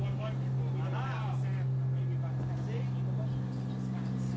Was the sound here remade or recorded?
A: recorded